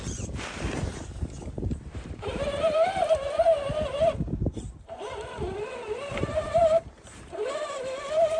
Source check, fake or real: fake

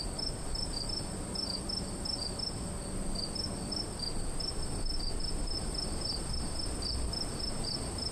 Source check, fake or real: real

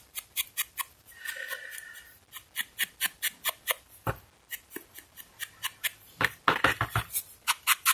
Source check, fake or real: real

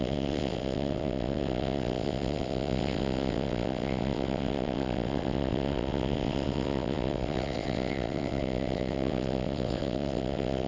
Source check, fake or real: fake